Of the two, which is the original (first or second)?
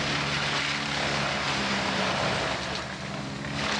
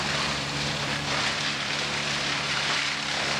first